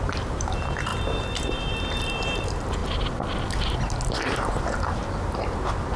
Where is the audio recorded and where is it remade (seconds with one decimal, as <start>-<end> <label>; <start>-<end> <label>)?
0.0-2.8 remade; 2.8-4.6 recorded; 4.6-6.0 remade